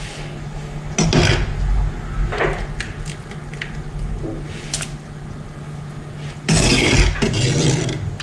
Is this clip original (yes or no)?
yes